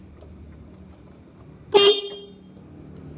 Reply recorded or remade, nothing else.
recorded